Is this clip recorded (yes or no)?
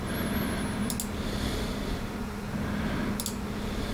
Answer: yes